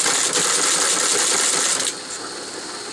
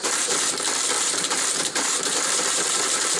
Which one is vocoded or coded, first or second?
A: second